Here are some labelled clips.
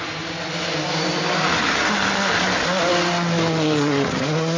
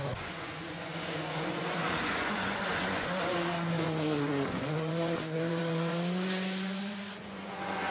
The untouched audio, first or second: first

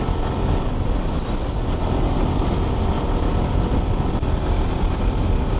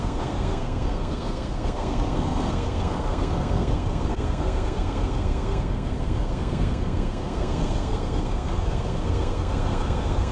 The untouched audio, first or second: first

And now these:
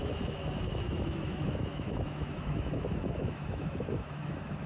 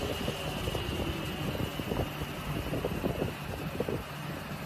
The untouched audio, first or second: second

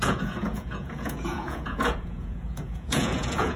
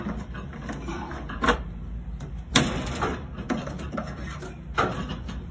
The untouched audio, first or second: second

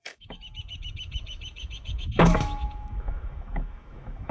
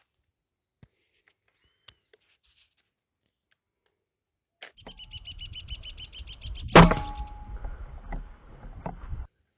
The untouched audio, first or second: second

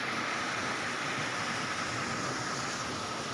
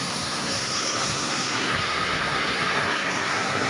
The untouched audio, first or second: first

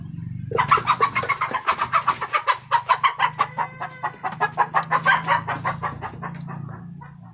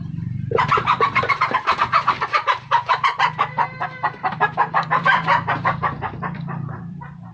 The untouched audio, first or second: first